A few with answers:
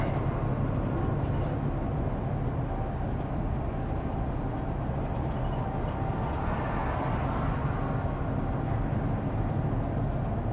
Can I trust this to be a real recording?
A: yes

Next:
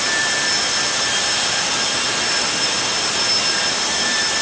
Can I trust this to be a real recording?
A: yes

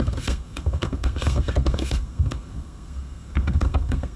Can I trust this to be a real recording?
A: no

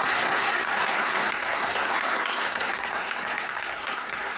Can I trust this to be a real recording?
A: no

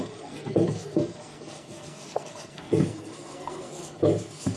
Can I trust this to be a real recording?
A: no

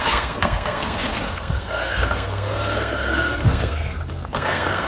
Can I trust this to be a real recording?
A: no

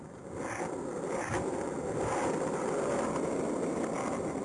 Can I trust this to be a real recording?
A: yes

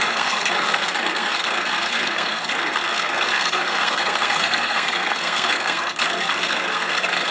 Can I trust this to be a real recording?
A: no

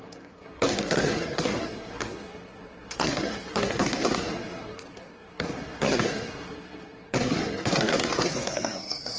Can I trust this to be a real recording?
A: no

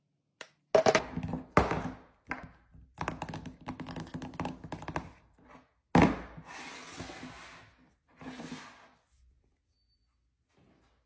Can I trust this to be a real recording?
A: yes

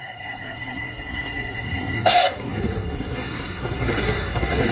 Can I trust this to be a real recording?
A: no